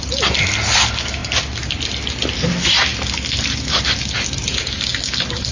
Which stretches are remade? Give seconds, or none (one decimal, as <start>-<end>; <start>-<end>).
none